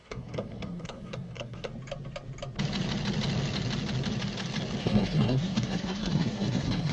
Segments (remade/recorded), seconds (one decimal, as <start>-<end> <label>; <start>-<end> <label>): 0.0-1.7 remade; 1.7-4.8 recorded; 4.8-6.9 remade